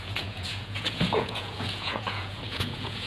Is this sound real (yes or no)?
no